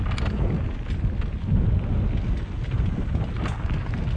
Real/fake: real